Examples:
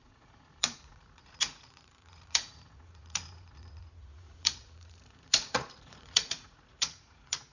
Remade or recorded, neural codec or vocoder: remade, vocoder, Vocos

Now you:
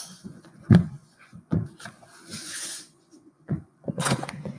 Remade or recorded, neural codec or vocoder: remade, vocoder, Vocos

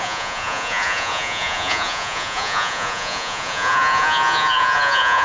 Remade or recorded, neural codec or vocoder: remade, vocoder, Vocos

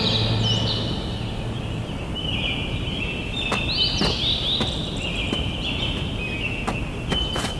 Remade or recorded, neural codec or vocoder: recorded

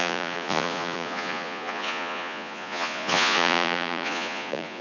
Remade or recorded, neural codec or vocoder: remade, vocoder, Vocos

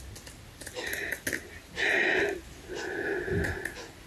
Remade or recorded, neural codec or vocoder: recorded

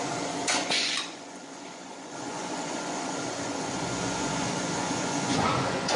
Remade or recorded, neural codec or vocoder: remade, vocoder, Vocos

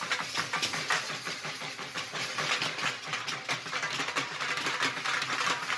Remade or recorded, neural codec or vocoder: recorded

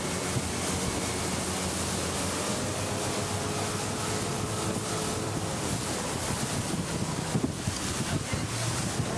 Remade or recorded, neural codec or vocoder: recorded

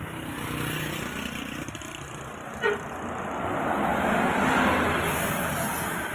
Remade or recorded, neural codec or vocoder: recorded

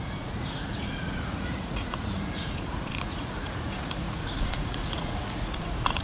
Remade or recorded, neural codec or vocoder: remade, vocoder, Vocos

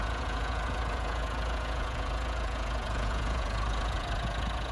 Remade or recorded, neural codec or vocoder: remade, vocoder, Vocos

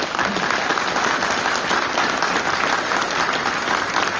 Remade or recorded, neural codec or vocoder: recorded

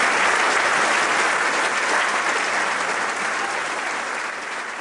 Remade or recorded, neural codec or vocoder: recorded